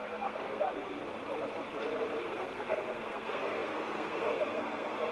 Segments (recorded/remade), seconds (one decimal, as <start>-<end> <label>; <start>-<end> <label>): 0.0-1.0 remade; 1.0-2.2 recorded; 2.2-5.1 remade

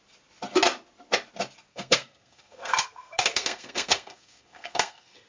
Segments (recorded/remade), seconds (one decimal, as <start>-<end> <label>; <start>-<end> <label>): 0.0-1.7 recorded; 1.7-5.3 remade

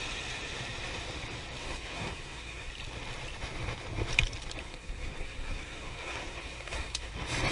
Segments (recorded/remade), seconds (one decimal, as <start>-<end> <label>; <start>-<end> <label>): 0.0-1.6 recorded; 1.6-2.7 remade; 2.7-4.6 recorded; 4.6-7.1 remade; 7.1-7.5 recorded

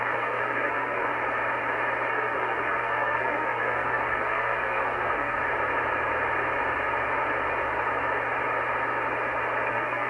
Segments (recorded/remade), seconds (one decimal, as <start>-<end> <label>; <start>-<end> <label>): 0.0-1.1 remade; 1.1-2.1 recorded; 2.1-5.4 remade; 5.4-9.7 recorded; 9.7-10.1 remade

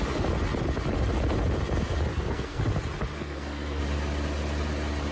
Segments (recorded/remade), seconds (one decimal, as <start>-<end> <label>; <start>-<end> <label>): 0.0-2.1 recorded; 2.1-2.6 remade; 2.6-3.2 recorded; 3.2-3.8 remade; 3.8-5.1 recorded